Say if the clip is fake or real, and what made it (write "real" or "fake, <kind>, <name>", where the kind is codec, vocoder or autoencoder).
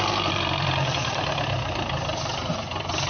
fake, vocoder, BigVGAN v2